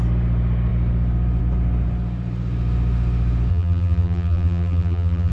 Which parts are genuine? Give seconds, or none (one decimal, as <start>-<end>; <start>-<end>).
0.0-3.5